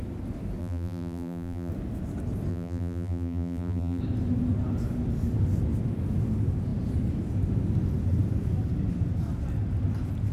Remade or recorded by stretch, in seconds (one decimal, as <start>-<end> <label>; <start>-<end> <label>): 0.0-0.6 recorded; 0.6-1.7 remade; 1.7-2.5 recorded; 2.5-4.0 remade; 4.0-10.3 recorded